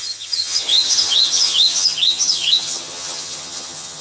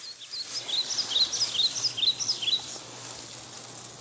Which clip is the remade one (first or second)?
first